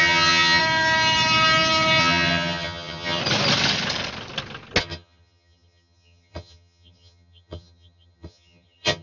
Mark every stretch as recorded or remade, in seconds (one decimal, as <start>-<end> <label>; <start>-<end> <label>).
0.0-0.6 remade; 0.6-2.0 recorded; 2.0-3.2 remade; 3.2-4.8 recorded; 4.8-9.0 remade